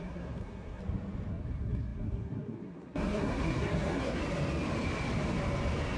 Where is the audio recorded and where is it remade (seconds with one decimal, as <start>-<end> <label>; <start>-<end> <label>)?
0.0-0.8 remade; 0.8-1.3 recorded; 1.3-4.2 remade; 4.2-6.0 recorded